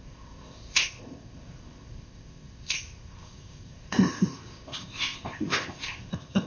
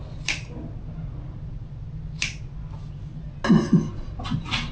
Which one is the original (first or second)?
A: second